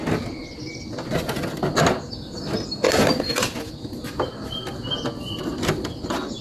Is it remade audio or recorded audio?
recorded